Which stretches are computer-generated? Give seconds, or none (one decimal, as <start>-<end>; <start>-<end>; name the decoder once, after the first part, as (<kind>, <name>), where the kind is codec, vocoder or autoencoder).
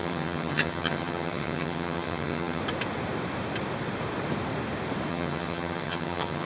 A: 0.0-2.6 (vocoder, HiFi-GAN); 5.1-6.5